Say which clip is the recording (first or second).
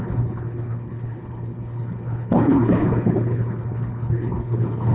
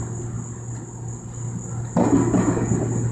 second